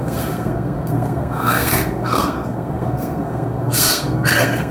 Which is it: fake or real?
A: fake